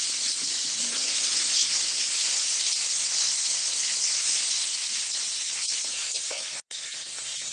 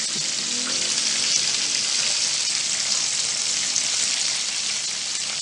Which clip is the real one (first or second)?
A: second